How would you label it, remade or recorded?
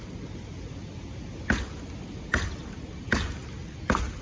recorded